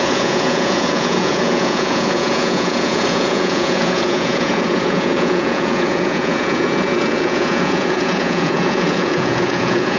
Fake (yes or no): yes